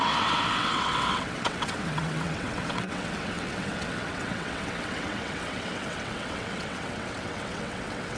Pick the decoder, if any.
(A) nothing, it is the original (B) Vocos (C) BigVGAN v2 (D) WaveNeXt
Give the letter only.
D